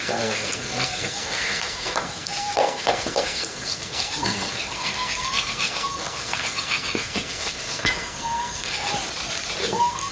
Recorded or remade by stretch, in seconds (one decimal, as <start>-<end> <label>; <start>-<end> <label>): 0.0-8.9 remade; 8.9-9.6 recorded; 9.6-10.1 remade